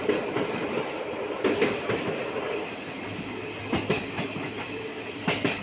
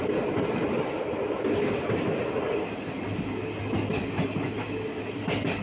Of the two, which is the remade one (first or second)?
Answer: first